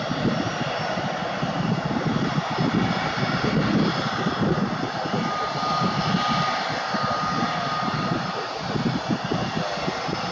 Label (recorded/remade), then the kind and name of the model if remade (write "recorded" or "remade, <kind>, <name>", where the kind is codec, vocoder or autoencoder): recorded